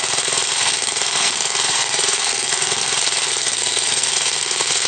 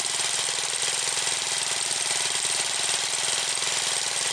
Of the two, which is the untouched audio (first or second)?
second